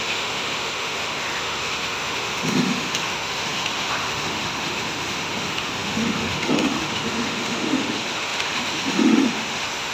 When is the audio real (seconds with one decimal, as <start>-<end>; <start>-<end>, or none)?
none